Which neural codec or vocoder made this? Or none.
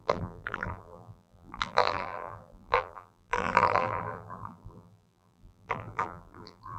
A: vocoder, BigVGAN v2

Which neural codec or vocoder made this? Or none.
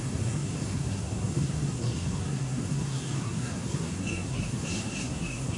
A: codec, SNAC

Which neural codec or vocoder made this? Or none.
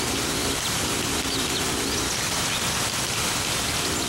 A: none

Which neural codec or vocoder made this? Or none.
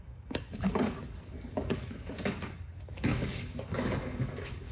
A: codec, DAC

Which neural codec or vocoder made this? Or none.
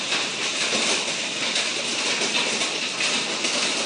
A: none